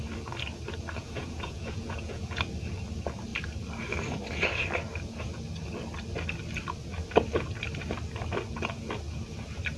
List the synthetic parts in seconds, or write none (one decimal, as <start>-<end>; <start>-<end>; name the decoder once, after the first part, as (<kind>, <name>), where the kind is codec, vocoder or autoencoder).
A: 1.0-2.4 (vocoder, Vocos)